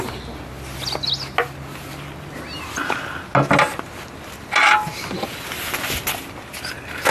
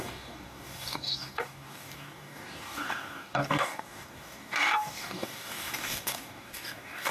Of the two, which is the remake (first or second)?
second